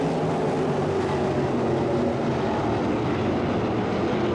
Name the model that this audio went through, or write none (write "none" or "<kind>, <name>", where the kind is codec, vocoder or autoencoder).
none